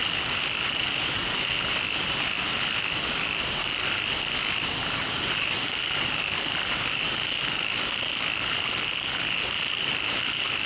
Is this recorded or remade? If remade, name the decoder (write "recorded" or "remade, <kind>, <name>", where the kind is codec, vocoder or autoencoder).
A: recorded